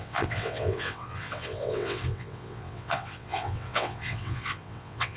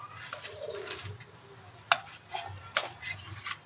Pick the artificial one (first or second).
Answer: first